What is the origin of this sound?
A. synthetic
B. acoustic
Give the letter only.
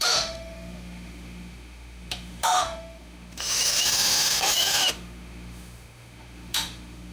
A